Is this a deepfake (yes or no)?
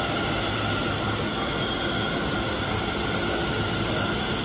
no